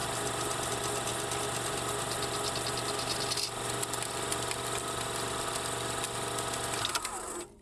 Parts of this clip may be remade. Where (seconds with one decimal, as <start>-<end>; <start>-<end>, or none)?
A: none